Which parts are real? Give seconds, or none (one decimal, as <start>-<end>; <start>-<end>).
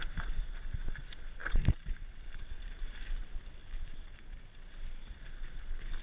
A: 0.0-3.6; 5.6-6.0